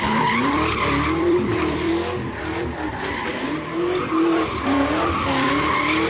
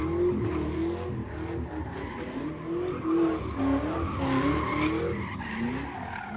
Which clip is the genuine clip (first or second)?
second